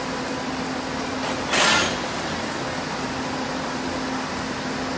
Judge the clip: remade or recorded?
recorded